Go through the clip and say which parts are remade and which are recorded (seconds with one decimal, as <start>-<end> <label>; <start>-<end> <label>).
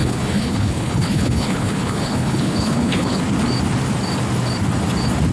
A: 0.0-3.2 remade; 3.2-5.3 recorded